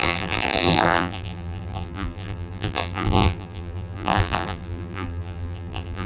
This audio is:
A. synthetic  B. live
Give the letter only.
A